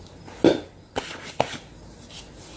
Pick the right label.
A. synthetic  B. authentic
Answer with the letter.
B